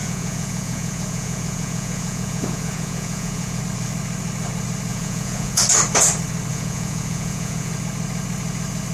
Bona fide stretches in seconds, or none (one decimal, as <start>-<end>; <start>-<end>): 3.6-4.9; 5.6-6.5; 7.7-8.9